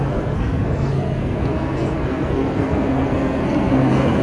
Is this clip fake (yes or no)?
yes